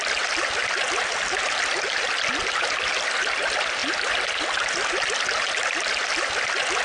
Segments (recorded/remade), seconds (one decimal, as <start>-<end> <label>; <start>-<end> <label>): 0.0-6.8 recorded